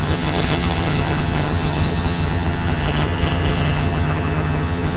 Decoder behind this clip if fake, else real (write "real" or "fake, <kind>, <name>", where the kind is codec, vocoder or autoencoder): fake, vocoder, HiFi-GAN